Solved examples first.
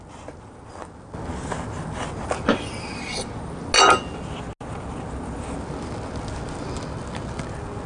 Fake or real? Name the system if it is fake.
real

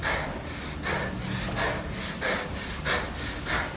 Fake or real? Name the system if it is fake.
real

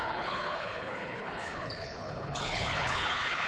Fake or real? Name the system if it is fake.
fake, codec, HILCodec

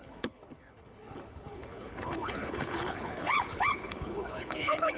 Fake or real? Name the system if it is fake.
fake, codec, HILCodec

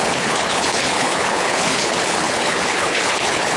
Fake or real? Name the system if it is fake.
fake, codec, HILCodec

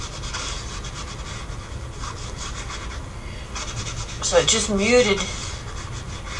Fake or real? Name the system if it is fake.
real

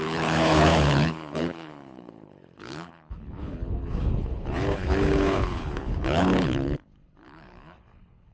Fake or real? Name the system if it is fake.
fake, codec, HILCodec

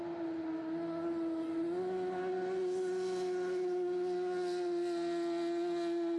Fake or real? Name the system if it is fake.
real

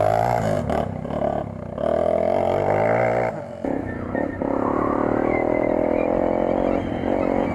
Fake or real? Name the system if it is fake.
real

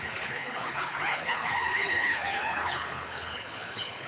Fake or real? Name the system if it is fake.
fake, codec, HILCodec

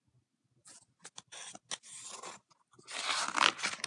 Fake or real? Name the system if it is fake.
real